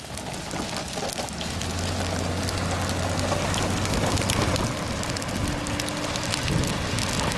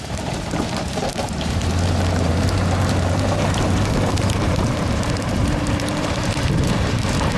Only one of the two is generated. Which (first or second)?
second